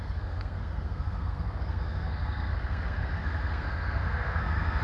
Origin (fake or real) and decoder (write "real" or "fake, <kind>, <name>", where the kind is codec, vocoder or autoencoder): fake, codec, SNAC